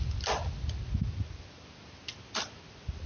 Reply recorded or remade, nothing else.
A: recorded